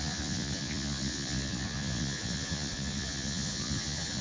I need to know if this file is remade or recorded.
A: remade